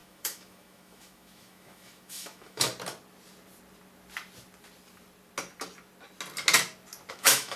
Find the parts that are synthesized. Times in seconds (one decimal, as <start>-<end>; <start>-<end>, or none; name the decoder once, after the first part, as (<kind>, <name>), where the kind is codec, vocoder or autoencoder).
0.0-2.7 (autoencoder, DAC-VAE); 7.1-7.6